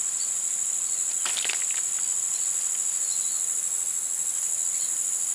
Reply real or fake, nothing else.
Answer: real